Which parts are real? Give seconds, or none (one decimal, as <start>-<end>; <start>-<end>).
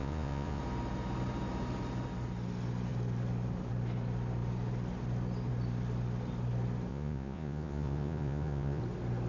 0.6-6.9; 8.8-9.3